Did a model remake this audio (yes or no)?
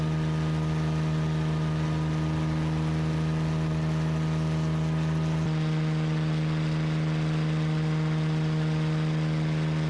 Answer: no